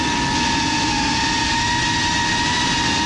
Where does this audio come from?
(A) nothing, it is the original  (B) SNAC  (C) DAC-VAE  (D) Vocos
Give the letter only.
A